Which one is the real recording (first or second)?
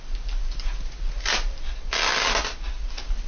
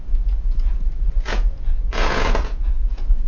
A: first